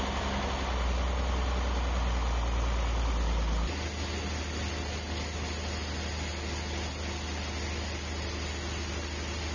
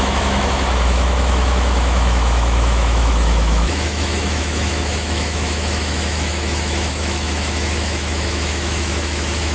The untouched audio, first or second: first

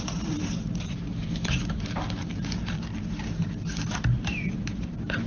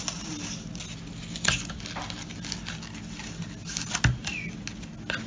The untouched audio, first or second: second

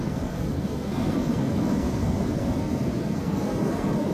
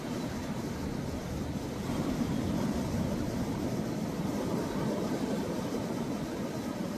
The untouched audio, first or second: second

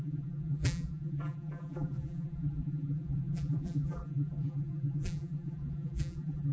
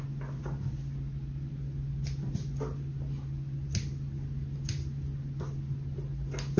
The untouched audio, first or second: second